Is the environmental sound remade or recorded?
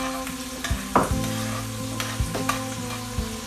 recorded